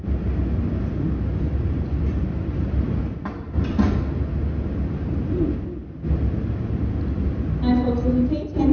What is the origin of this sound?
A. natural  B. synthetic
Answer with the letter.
A